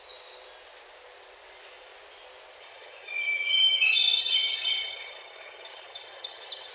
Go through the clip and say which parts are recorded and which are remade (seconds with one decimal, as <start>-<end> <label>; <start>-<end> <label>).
0.0-2.6 recorded; 2.6-6.7 remade